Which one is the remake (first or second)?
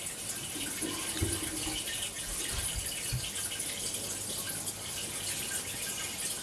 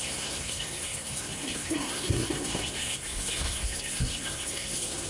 second